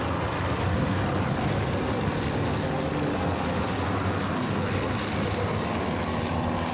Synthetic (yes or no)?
no